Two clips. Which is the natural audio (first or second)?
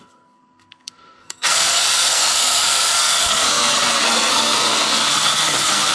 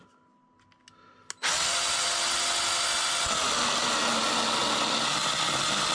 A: second